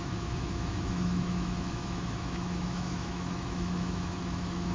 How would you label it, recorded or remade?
remade